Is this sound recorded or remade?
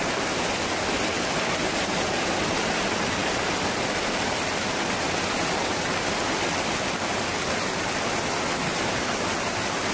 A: recorded